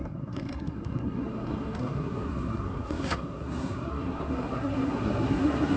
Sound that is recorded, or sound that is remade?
remade